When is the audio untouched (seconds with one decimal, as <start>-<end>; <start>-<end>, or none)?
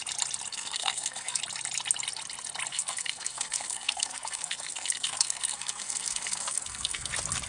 0.0-0.5; 1.4-2.7; 7.1-7.5